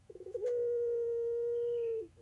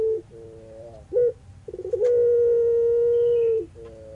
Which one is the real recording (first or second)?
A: second